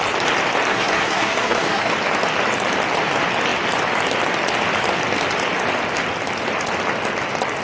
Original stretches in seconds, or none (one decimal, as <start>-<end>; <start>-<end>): 0.0-0.7; 1.9-7.6